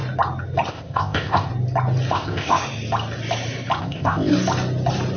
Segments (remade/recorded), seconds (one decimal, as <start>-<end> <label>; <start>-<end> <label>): 0.0-0.7 recorded; 0.7-1.5 remade; 1.5-2.1 recorded; 2.1-2.6 remade; 2.6-3.8 recorded; 3.8-4.3 remade; 4.3-5.2 recorded